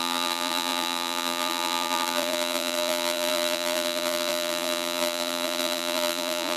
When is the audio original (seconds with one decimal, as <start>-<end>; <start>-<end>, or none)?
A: none